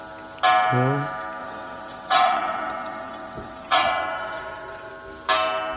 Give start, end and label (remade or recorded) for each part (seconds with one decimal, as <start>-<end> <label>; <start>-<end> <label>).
0.0-1.4 recorded; 1.4-4.9 remade; 4.9-5.8 recorded